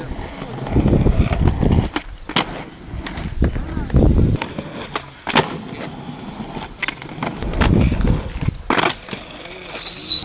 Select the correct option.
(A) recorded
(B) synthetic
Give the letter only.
A